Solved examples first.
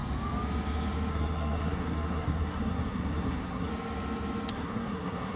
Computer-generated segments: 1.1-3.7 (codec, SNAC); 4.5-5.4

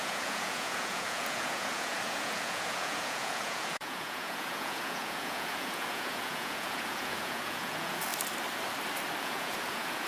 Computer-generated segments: 0.0-8.1 (vocoder, Vocos); 9.2-10.1

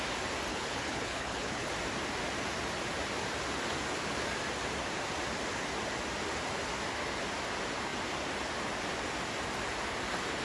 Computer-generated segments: 0.5-1.7 (codec, HILCodec)